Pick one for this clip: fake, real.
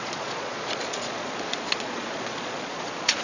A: fake